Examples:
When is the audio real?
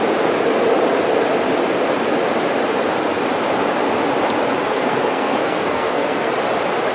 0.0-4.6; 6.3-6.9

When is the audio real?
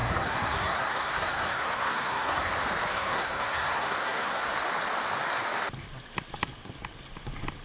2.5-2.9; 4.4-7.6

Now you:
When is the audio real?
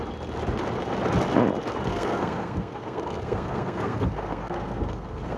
0.0-1.9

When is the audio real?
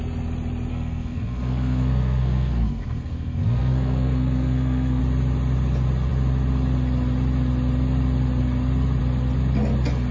0.0-0.7; 5.0-10.1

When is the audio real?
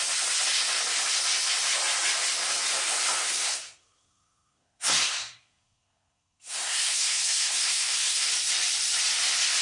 0.0-3.2; 8.3-9.6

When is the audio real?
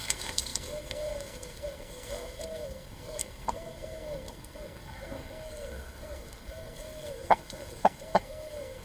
none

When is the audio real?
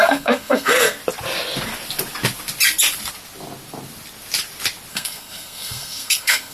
1.0-4.9